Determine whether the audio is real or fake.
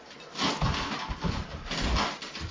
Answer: real